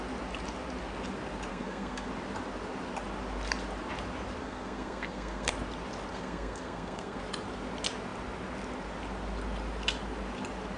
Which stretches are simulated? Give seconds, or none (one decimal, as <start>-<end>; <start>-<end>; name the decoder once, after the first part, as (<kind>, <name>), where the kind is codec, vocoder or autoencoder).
1.5-2.1 (codec, SNAC); 4.4-5.5; 6.1-7.2